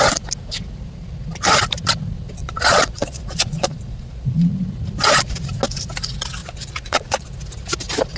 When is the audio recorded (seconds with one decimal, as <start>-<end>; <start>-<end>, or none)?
0.0-2.4; 4.5-6.4; 7.3-8.2